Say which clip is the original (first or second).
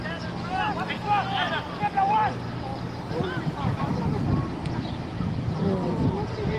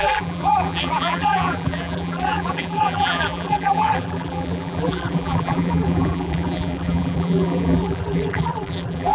first